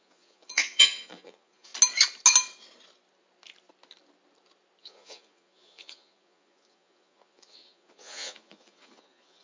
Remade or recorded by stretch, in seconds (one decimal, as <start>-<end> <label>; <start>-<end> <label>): 0.0-1.7 remade; 1.7-4.8 recorded; 4.8-9.4 remade